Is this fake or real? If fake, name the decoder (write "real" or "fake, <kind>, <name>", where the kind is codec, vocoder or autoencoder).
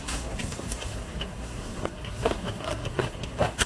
fake, codec, SNAC